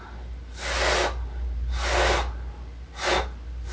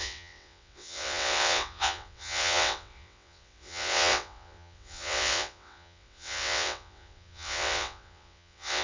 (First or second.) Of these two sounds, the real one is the first